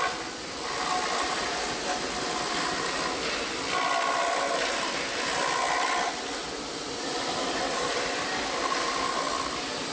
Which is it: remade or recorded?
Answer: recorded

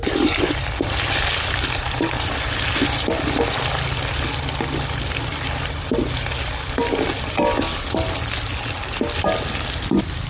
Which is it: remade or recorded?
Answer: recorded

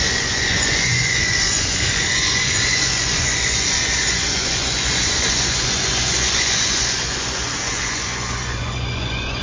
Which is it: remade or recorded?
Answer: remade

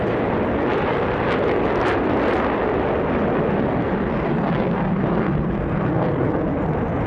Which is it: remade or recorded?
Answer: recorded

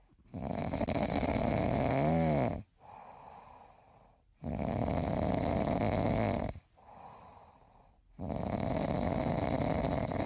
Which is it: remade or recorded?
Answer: recorded